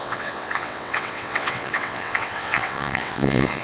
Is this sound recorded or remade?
remade